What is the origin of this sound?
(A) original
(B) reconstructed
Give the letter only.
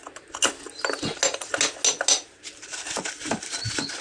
A